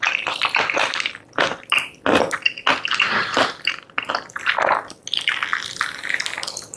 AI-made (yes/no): no